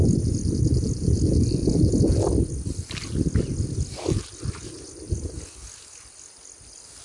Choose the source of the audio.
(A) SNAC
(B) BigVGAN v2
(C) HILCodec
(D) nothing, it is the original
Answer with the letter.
D